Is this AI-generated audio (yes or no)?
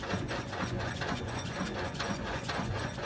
yes